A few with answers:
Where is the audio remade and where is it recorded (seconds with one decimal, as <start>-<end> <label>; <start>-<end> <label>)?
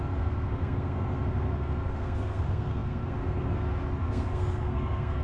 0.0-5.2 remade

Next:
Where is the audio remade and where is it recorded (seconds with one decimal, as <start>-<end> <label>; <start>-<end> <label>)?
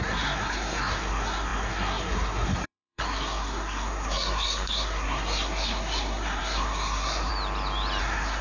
0.0-7.3 remade; 7.3-8.0 recorded; 8.0-8.4 remade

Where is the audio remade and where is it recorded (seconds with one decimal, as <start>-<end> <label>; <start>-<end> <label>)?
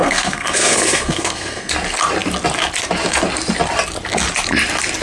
0.0-1.7 remade; 1.7-5.0 recorded